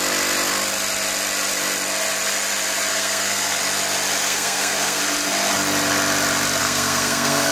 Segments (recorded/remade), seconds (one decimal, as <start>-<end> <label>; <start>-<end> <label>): 0.0-2.9 recorded; 2.9-3.6 remade; 3.6-4.2 recorded; 4.2-5.0 remade; 5.0-6.6 recorded; 6.6-7.5 remade